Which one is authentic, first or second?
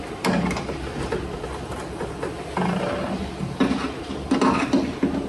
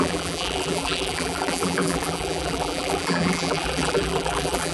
first